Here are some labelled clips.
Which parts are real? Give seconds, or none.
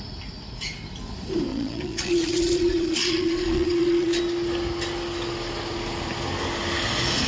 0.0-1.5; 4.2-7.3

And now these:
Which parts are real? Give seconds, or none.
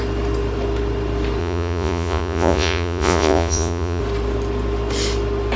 0.0-1.4; 4.0-5.6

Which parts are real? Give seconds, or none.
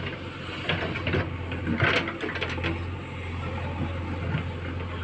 0.0-5.0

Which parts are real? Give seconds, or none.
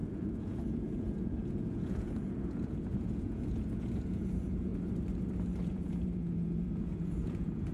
4.7-5.7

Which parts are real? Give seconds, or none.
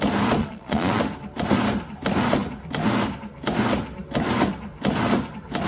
0.0-0.4; 1.0-5.7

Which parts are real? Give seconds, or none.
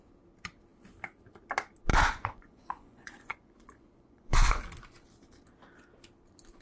0.0-1.9; 4.6-6.6